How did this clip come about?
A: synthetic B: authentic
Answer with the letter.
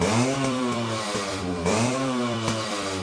A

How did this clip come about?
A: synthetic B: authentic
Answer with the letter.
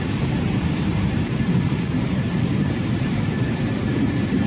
A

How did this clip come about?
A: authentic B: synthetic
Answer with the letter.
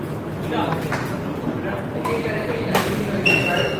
A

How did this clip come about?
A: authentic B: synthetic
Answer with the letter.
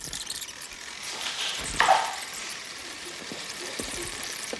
B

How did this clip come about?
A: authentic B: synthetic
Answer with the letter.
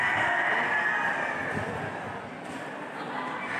A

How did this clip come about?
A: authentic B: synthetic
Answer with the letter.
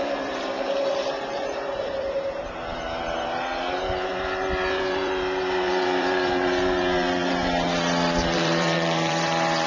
B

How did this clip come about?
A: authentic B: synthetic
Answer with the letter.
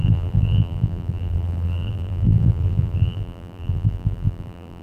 B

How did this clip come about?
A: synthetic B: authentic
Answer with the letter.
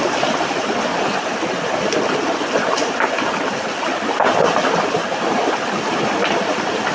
A